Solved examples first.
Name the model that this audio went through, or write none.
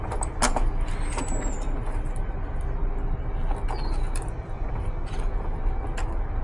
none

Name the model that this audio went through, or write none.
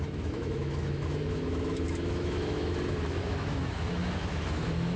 autoencoder, DAC-VAE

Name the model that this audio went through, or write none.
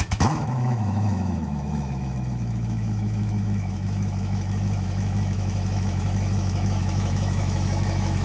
autoencoder, DAC-VAE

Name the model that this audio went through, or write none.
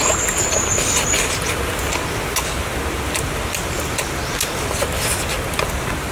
none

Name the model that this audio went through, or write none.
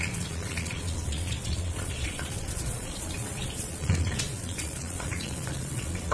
vocoder, Vocos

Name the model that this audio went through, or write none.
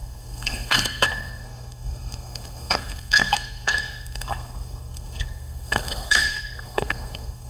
codec, SNAC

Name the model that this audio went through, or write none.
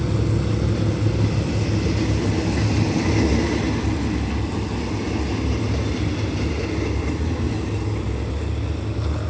none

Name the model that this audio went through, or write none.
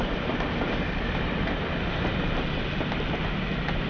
none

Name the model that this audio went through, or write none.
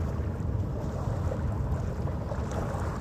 none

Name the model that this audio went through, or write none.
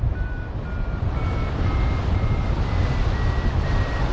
none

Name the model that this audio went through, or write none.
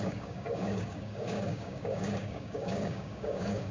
codec, DAC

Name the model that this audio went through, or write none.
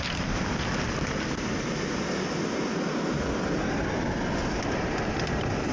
none